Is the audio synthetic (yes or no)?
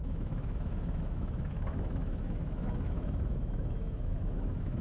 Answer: yes